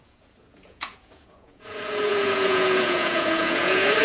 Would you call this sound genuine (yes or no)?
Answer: no